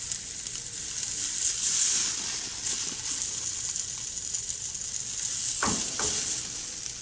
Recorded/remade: recorded